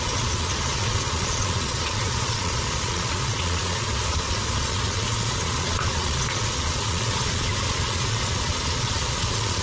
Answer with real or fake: fake